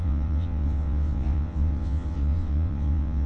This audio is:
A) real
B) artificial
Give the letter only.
B